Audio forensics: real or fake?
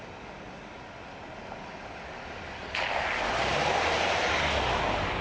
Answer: real